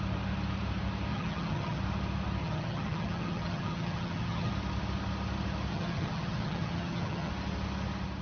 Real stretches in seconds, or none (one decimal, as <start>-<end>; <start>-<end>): 0.0-1.1; 1.8-2.4; 4.5-5.7; 7.3-8.2